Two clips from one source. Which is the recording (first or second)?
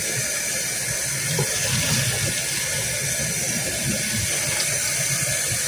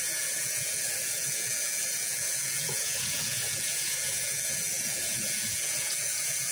first